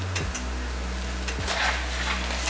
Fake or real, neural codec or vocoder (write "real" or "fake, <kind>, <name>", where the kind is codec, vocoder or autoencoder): real